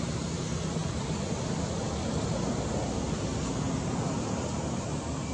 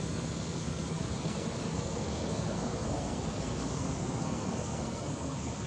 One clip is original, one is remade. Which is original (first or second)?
first